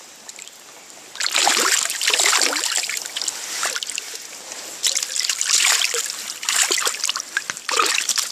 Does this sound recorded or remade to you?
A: remade